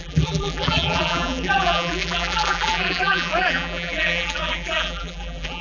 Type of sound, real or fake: fake